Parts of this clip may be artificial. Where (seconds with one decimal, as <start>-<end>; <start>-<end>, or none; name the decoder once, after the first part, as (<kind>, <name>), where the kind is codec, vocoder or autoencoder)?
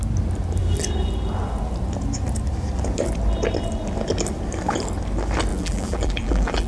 5.5-6.7 (vocoder, BigVGAN v2)